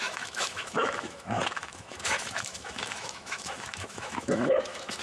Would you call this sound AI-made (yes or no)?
yes